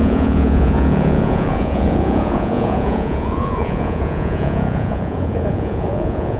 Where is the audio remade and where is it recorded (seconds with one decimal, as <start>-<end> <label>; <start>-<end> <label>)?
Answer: 0.0-6.4 remade